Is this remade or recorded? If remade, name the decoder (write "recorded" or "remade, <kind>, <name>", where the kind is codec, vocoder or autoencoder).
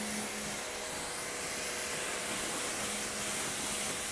recorded